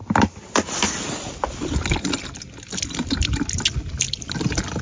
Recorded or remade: recorded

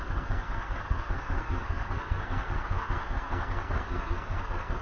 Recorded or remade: remade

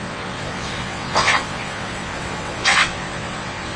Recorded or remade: remade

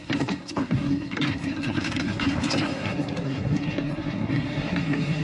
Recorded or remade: remade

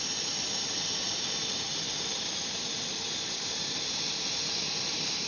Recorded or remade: recorded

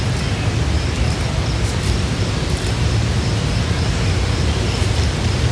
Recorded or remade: recorded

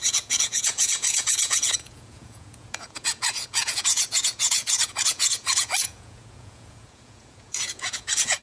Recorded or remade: remade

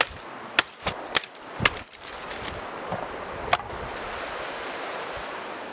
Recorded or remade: recorded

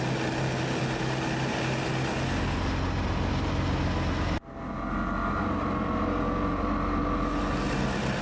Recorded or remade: recorded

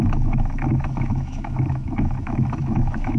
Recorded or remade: remade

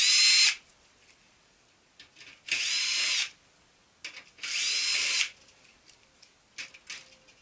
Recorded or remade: recorded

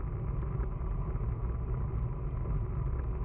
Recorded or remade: recorded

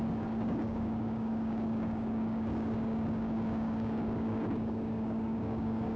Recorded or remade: remade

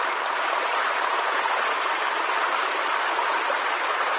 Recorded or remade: recorded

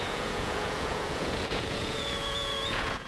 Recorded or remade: remade